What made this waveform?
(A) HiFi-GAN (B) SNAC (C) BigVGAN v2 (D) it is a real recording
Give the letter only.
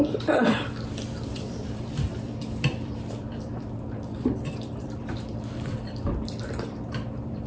C